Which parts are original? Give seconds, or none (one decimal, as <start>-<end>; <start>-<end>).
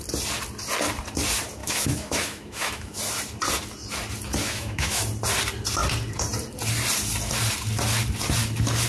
0.0-1.6; 3.0-4.4; 5.0-8.9